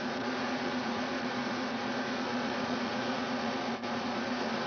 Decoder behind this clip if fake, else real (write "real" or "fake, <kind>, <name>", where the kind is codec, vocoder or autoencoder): fake, vocoder, Vocos